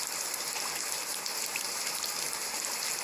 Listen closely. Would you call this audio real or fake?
real